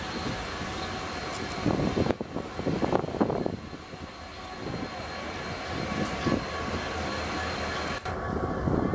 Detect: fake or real real